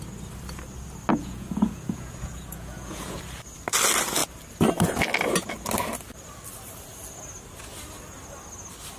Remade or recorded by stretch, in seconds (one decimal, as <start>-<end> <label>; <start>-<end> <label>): 0.0-1.1 recorded; 1.1-3.2 remade; 3.2-9.0 recorded